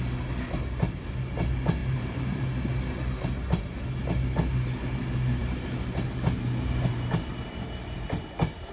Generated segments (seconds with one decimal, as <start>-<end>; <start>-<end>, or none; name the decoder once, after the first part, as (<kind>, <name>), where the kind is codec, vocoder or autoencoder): 1.8-2.4 (vocoder, BigVGAN v2)